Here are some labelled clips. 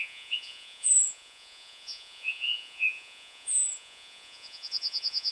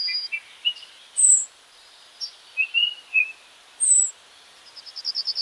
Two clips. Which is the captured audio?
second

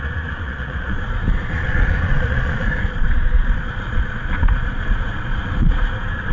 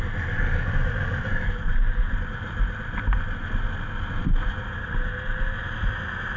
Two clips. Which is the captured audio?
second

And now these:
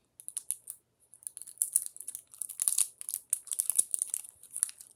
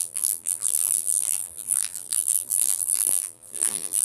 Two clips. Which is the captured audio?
first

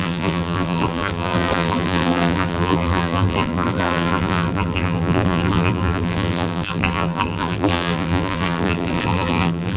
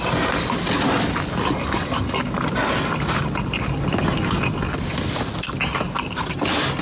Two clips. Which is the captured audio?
second